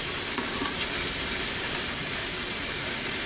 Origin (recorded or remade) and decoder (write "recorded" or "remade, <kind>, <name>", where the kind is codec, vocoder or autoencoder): remade, vocoder, BigVGAN v2